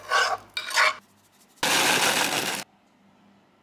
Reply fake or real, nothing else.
real